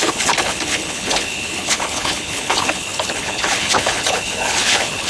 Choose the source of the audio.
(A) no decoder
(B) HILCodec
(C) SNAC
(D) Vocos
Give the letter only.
B